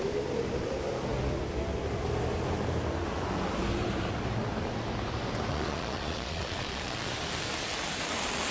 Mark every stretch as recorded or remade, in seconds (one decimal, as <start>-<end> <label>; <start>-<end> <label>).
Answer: 0.0-5.5 recorded; 5.5-7.1 remade; 7.1-8.5 recorded